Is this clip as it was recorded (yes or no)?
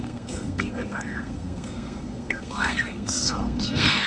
no